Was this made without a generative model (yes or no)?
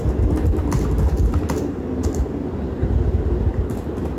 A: yes